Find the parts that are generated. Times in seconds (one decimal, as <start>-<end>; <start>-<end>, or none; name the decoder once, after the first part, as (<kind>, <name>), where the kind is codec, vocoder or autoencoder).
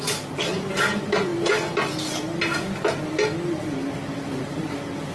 none